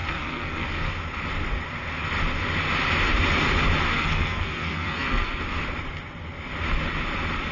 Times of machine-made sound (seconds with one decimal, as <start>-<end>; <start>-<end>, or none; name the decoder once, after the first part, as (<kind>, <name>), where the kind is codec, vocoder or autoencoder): 0.0-0.9 (codec, SNAC); 3.9-5.4